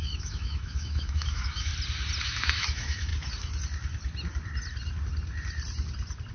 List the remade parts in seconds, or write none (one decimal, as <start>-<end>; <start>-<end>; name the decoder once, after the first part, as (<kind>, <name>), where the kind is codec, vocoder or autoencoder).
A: 0.0-1.7 (autoencoder, DAC-VAE); 2.2-3.1